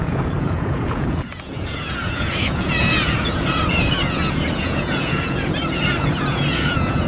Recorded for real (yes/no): no